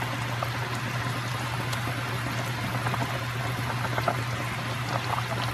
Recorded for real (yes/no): yes